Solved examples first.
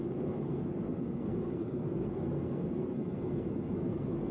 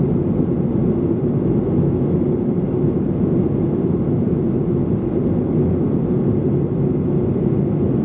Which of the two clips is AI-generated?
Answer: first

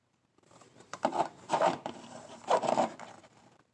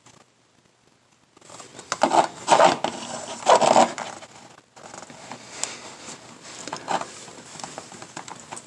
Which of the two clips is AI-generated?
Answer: first